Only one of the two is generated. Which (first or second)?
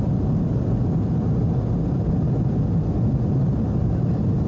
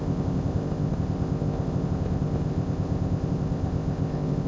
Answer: second